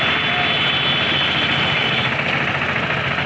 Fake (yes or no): no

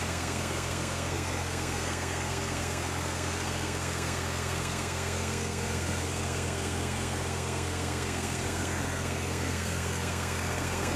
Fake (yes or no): yes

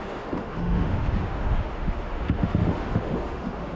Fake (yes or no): yes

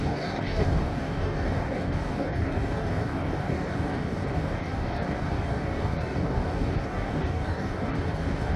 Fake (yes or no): yes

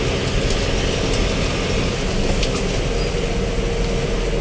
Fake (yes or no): no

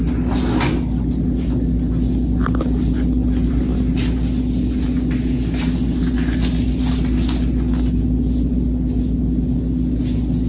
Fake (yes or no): no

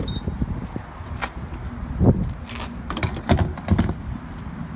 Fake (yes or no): no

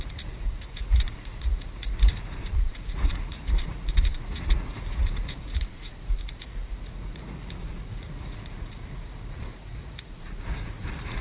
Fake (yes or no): yes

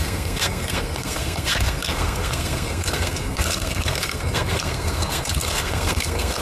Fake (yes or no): yes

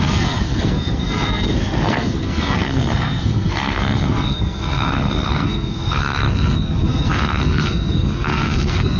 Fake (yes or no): yes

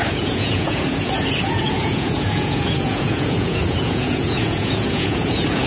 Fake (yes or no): yes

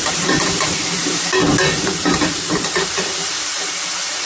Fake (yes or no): yes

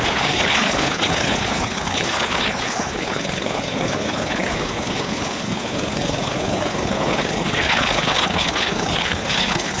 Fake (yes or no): yes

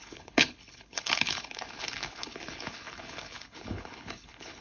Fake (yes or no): yes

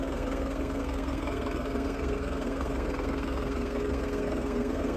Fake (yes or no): yes